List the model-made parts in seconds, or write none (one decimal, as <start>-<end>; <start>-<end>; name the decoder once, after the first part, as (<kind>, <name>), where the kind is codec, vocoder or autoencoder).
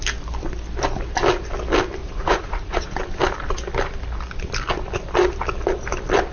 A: 2.0-2.9 (vocoder, Vocos)